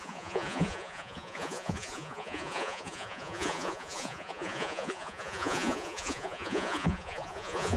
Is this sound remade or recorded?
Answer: remade